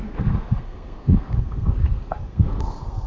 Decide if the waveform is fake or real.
fake